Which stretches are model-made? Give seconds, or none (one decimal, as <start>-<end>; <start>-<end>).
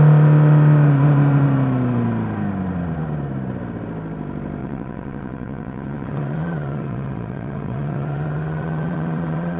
4.6-9.6